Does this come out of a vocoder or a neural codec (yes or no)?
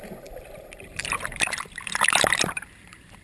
yes